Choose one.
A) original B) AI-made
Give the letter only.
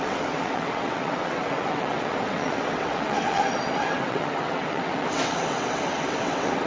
B